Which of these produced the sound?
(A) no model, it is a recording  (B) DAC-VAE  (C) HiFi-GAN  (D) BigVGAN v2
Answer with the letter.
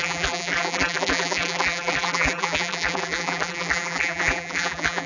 D